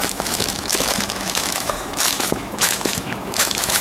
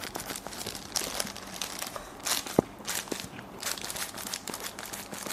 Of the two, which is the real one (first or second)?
second